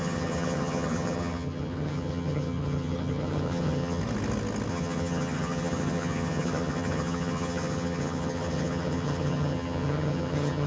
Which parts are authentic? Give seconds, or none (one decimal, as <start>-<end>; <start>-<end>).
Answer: 4.0-4.7